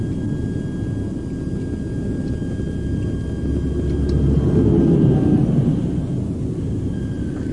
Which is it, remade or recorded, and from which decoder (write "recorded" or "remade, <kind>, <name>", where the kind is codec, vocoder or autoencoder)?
recorded